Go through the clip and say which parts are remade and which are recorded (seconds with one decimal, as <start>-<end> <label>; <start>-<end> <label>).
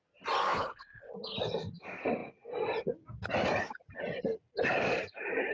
0.0-0.5 recorded; 0.5-1.1 remade; 1.1-5.5 recorded